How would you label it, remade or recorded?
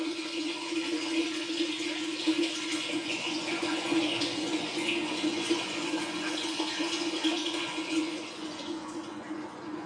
remade